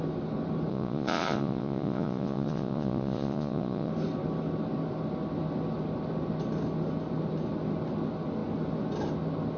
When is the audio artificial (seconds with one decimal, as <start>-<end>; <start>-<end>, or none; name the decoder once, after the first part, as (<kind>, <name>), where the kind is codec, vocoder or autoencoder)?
0.7-3.9 (vocoder, Vocos)